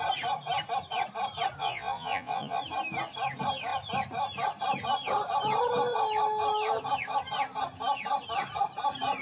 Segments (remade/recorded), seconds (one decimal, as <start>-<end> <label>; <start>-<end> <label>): 0.0-1.6 recorded; 1.6-2.6 remade; 2.6-9.2 recorded